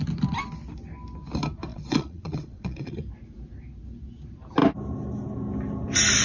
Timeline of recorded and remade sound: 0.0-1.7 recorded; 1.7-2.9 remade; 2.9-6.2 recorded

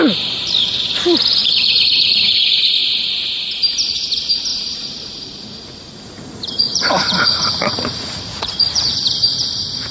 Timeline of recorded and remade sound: 0.0-1.4 recorded; 1.4-2.7 remade; 2.7-4.5 recorded; 4.5-8.9 remade; 8.9-9.9 recorded